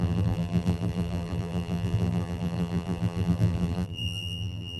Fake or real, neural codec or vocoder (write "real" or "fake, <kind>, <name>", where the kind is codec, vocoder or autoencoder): fake, vocoder, BigVGAN v2